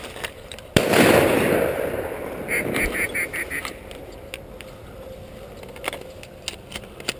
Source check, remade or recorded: recorded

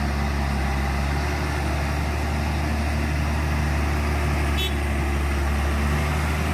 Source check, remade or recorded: recorded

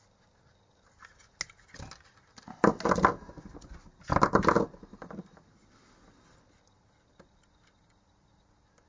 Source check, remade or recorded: recorded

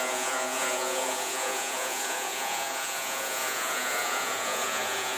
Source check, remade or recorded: remade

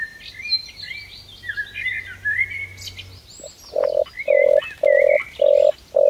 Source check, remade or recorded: recorded